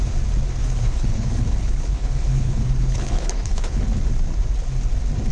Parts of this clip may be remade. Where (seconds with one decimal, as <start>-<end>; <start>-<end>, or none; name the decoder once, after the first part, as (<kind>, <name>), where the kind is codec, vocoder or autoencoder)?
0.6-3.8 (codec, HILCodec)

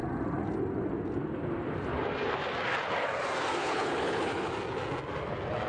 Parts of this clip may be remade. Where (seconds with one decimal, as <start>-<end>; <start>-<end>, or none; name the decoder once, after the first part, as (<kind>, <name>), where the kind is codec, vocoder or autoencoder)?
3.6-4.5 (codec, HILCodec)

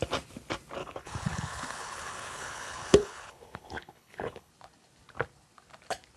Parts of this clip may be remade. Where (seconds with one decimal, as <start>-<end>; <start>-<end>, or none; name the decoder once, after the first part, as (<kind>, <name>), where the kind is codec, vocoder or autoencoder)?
0.8-4.5 (codec, HILCodec)

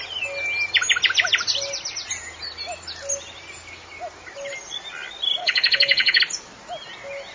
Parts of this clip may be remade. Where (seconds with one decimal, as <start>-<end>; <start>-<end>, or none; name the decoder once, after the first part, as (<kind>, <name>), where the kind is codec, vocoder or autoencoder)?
5.4-6.2 (codec, HILCodec)

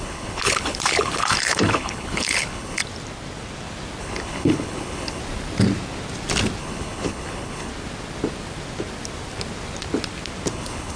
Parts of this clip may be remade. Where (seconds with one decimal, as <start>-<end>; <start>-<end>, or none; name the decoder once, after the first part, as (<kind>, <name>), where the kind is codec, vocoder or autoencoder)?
0.0-2.8 (codec, HILCodec); 4.0-5.2; 6.6-7.7; 10.5-11.0

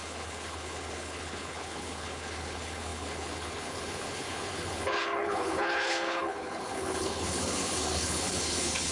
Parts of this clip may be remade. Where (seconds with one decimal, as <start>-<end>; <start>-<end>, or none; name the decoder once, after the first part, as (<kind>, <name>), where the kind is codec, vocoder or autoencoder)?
0.0-8.9 (codec, HILCodec)

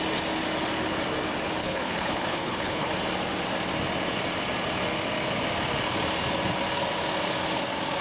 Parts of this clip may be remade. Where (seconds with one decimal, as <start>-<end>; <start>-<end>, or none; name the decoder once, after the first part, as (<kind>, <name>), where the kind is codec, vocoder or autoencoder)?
1.6-2.9 (codec, HILCodec)